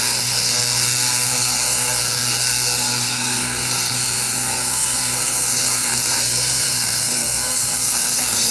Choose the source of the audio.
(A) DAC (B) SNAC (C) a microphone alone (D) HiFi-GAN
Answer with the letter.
B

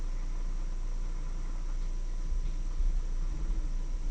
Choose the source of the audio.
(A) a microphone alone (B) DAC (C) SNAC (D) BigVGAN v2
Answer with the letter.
A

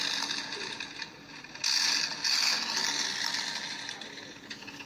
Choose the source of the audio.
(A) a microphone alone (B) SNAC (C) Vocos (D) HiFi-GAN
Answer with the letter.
A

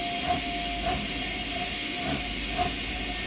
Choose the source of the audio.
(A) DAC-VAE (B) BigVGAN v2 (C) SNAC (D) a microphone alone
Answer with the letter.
D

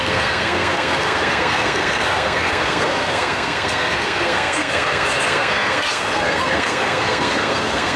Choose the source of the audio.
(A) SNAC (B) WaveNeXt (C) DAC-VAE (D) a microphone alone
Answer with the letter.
A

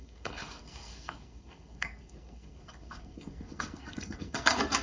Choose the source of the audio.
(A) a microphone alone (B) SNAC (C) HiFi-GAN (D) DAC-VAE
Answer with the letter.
B